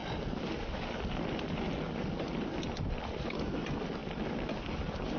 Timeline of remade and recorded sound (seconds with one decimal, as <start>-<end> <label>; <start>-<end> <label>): 0.0-5.2 recorded

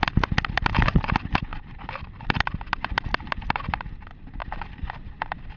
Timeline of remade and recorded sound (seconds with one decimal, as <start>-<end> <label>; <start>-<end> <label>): 0.0-1.5 recorded; 1.5-3.3 remade; 3.3-5.6 recorded

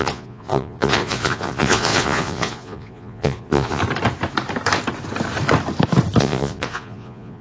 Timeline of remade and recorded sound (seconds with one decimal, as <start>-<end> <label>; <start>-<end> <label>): 0.0-3.8 remade; 3.8-6.2 recorded; 6.2-7.4 remade

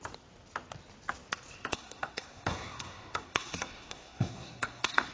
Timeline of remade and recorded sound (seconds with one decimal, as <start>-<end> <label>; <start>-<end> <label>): 0.0-1.7 recorded; 1.7-5.1 remade